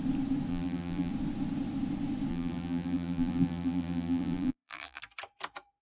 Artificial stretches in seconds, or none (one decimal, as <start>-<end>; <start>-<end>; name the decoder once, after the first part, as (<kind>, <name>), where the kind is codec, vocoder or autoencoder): 0.5-1.1 (vocoder, BigVGAN v2); 2.3-5.0